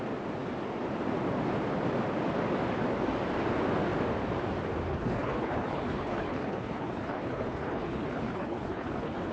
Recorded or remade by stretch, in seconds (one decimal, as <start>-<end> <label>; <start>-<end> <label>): 0.0-4.9 recorded; 4.9-9.3 remade